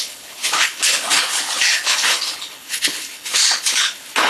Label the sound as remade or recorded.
remade